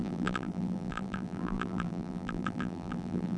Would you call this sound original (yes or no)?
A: no